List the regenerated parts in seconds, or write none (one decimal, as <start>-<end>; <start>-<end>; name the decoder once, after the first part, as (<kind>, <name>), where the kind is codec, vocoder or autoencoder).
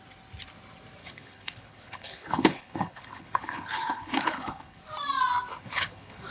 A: 1.0-4.8 (codec, HILCodec); 5.5-6.3